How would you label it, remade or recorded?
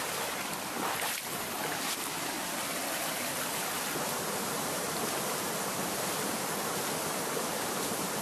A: remade